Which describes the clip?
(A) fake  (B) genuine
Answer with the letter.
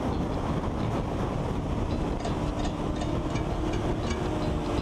B